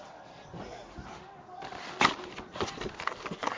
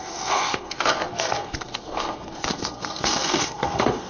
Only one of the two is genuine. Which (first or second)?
first